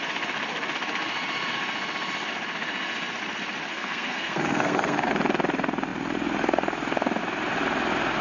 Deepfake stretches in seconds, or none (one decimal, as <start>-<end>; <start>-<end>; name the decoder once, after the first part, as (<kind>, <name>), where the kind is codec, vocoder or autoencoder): 3.7-5.1 (codec, SNAC)